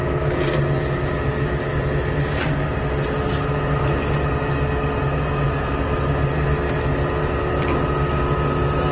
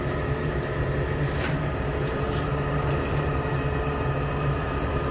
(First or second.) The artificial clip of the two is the second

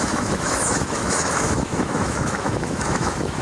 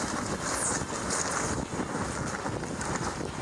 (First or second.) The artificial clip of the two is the first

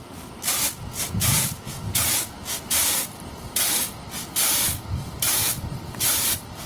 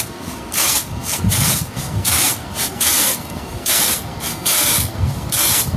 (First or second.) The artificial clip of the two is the second